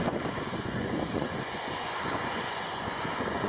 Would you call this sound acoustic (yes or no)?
no